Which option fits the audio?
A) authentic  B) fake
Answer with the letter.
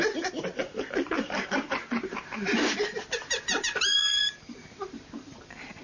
B